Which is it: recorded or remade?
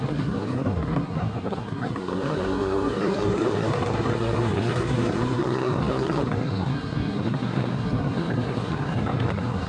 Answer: remade